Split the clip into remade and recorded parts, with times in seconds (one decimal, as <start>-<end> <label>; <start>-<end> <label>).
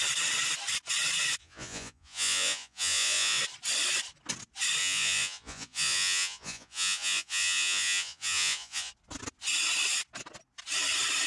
0.0-1.4 recorded; 1.4-3.4 remade; 3.4-4.8 recorded; 4.8-8.9 remade; 8.9-11.3 recorded